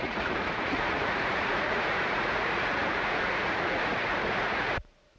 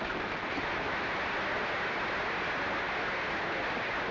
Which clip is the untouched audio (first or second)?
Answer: second